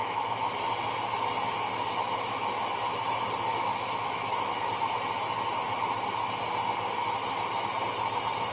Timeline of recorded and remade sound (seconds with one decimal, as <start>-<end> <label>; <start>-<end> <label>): 0.0-0.6 remade; 0.6-1.7 recorded; 1.7-2.6 remade; 2.6-3.5 recorded; 3.5-4.7 remade; 4.7-8.5 recorded